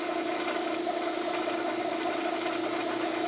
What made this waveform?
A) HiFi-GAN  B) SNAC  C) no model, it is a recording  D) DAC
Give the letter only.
C